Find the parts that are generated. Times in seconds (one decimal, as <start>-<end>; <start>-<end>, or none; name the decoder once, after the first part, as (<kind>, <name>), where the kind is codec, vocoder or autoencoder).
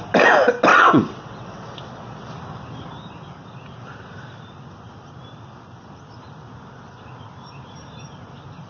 0.7-2.3 (vocoder, WaveNeXt)